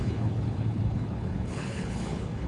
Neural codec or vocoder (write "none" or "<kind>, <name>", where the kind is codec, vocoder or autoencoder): codec, HILCodec